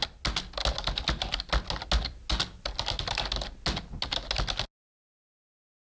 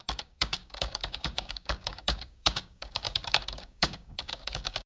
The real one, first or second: first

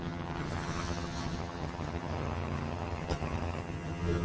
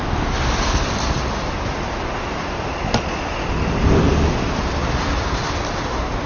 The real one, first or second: second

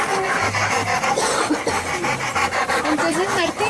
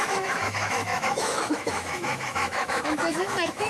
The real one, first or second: first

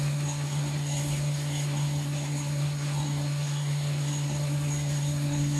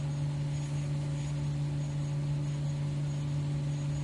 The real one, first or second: second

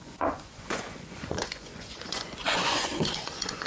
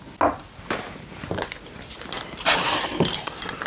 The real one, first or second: second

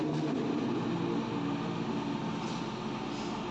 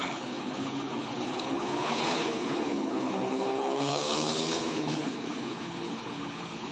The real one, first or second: first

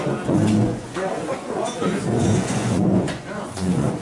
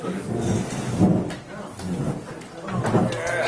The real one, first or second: second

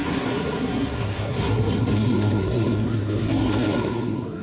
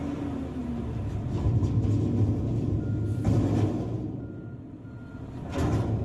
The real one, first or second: second